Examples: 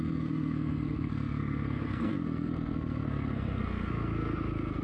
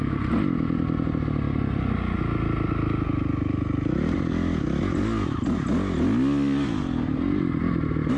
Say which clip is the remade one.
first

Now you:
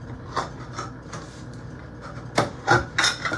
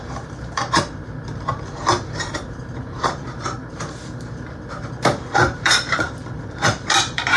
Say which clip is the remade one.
second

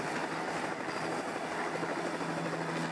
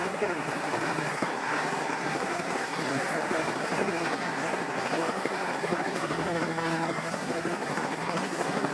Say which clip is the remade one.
second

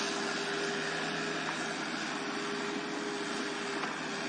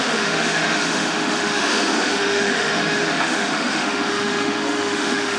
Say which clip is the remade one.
second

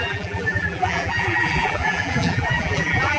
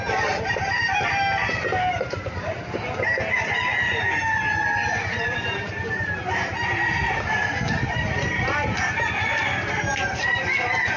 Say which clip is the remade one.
first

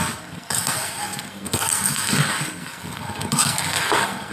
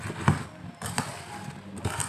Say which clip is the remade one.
first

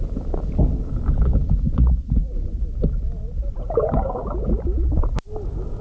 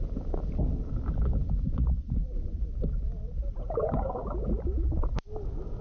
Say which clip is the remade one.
second